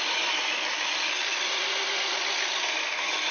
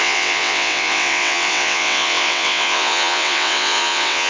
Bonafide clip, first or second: first